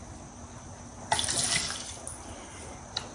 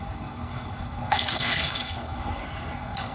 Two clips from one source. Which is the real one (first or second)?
first